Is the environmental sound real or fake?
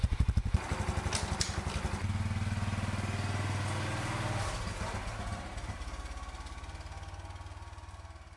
real